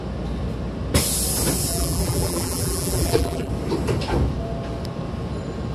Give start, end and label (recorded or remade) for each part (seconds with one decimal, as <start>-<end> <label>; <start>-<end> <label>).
0.0-1.7 recorded; 1.7-3.5 remade; 3.5-5.7 recorded